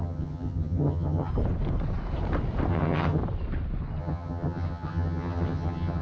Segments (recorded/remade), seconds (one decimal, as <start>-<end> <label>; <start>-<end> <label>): 0.0-1.3 remade; 1.3-2.7 recorded; 2.7-3.2 remade; 3.2-4.0 recorded; 4.0-6.0 remade